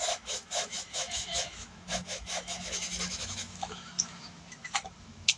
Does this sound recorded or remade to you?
remade